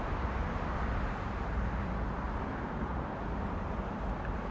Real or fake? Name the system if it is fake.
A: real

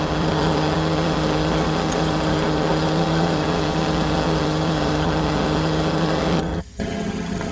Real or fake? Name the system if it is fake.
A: fake, vocoder, HiFi-GAN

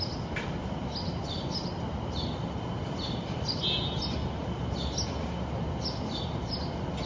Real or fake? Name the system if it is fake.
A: real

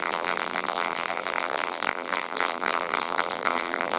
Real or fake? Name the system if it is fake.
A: fake, vocoder, BigVGAN v2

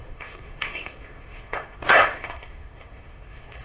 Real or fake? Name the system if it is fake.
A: fake, codec, SNAC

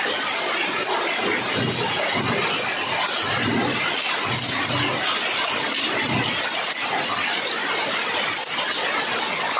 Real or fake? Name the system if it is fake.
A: real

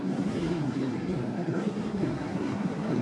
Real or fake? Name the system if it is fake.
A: fake, codec, SNAC